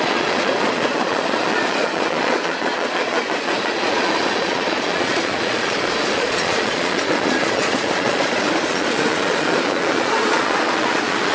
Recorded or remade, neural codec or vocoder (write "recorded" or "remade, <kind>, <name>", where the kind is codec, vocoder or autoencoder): remade, vocoder, Vocos